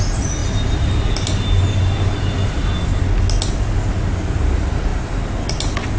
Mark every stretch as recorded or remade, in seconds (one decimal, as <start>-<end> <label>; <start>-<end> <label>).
0.0-6.0 recorded